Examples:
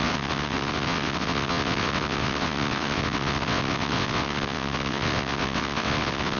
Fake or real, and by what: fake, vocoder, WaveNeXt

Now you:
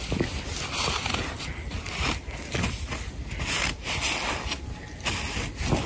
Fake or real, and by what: real